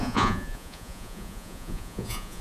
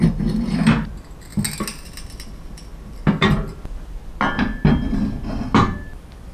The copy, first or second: first